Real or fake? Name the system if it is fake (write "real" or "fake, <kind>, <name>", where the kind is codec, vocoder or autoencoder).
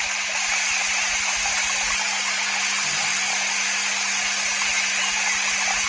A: real